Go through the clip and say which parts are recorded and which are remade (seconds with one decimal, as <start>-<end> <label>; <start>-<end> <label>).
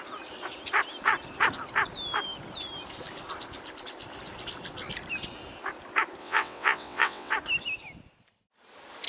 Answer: 0.0-6.2 recorded; 6.2-7.3 remade; 7.3-9.1 recorded